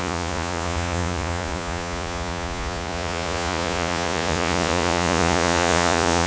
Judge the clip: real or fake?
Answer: fake